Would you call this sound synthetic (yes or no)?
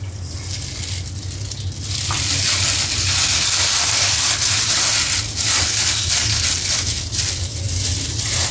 no